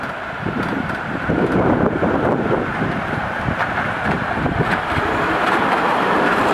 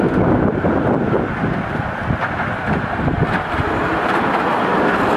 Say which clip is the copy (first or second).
first